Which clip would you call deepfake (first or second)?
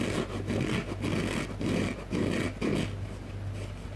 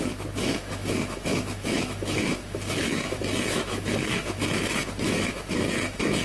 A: second